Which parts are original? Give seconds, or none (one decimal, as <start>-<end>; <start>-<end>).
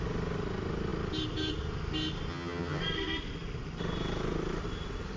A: 0.0-2.3; 2.8-5.2